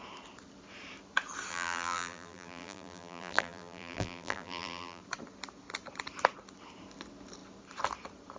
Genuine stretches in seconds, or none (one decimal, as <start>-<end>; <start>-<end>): 0.0-1.5; 5.0-8.4